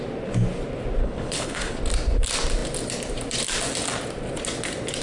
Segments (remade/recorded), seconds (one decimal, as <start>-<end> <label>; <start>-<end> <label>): 0.0-1.0 recorded; 1.0-1.8 remade; 1.8-5.0 recorded